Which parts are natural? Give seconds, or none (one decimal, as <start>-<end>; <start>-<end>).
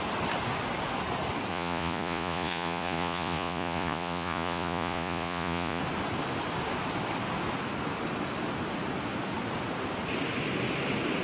0.0-1.5; 5.8-11.2